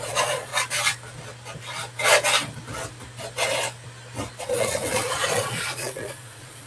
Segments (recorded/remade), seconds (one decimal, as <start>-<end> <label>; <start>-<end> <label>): 0.0-0.5 remade; 0.5-4.4 recorded; 4.4-6.7 remade